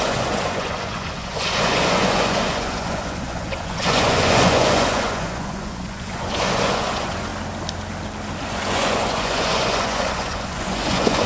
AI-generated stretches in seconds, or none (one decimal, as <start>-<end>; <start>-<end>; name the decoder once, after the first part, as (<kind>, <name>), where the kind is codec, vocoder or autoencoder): 0.0-7.3 (vocoder, Vocos); 8.4-11.3